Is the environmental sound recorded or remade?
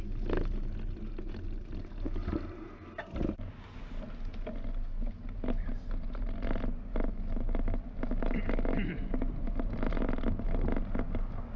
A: recorded